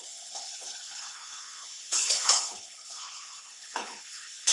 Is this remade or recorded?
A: remade